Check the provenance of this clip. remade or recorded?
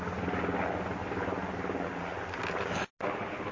recorded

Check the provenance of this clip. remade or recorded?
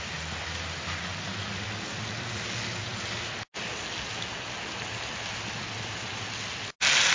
recorded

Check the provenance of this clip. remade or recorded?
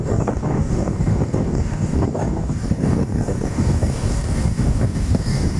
remade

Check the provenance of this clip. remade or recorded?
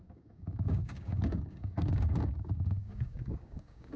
remade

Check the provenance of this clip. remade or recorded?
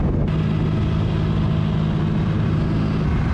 recorded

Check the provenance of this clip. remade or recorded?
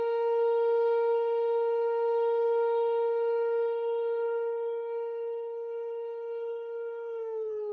remade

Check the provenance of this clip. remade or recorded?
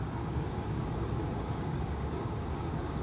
remade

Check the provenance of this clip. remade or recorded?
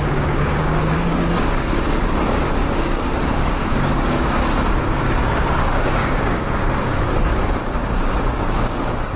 remade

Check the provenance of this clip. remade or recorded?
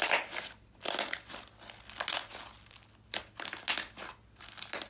recorded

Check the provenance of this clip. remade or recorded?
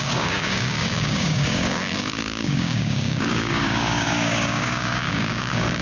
remade